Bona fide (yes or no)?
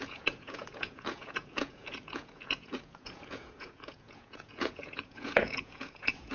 no